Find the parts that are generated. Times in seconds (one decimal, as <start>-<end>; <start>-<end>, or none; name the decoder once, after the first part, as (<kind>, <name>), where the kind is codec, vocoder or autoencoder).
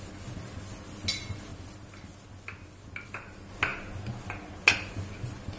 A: none